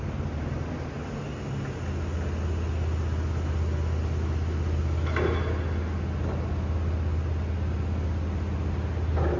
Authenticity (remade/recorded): recorded